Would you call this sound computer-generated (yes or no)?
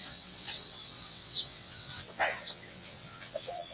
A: yes